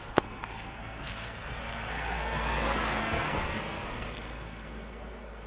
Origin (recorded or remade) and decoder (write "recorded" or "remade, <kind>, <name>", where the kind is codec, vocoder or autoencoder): remade, codec, SNAC